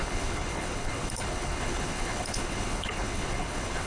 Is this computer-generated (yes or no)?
yes